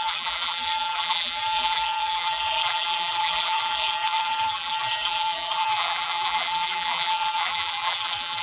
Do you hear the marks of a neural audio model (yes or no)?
yes